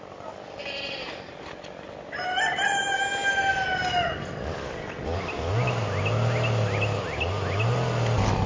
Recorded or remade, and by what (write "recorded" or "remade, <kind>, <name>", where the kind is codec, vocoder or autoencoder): recorded